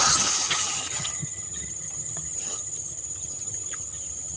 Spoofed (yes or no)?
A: yes